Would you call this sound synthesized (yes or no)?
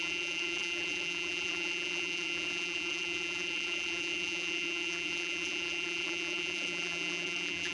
yes